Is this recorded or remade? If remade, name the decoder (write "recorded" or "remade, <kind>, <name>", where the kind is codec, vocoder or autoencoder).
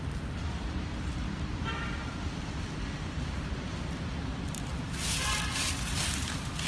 remade, vocoder, BigVGAN v2